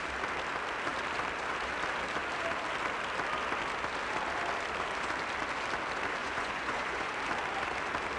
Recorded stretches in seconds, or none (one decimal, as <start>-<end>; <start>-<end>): 0.0-6.2; 7.1-8.2